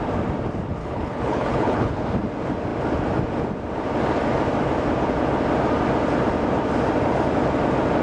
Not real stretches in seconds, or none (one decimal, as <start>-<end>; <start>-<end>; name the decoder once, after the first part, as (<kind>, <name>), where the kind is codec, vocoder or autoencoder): 0.8-2.0 (codec, HILCodec)